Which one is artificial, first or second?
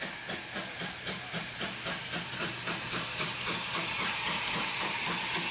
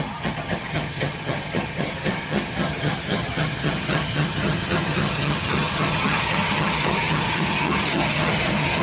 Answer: second